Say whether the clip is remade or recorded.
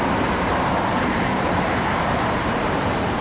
remade